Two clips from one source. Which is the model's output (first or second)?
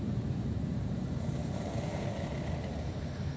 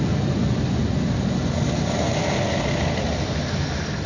first